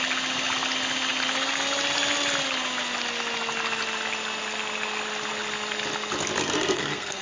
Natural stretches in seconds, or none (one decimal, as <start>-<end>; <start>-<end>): 0.0-6.4